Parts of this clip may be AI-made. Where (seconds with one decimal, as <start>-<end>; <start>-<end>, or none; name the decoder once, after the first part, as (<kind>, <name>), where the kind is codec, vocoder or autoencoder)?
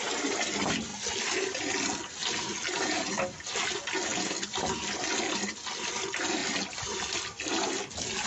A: none